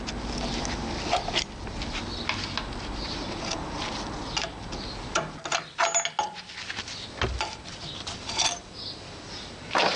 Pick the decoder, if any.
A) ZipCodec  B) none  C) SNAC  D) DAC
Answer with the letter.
B